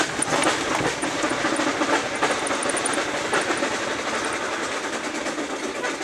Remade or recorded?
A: recorded